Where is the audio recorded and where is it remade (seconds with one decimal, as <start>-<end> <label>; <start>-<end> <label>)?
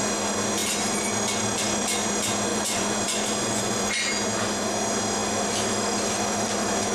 0.0-2.5 recorded; 2.5-4.1 remade; 4.1-6.9 recorded